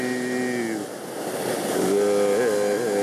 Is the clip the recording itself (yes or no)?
yes